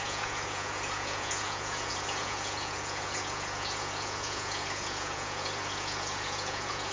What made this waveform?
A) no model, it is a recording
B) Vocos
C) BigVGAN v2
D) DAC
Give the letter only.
B